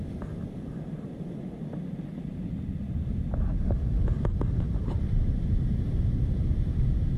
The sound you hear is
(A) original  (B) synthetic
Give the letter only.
A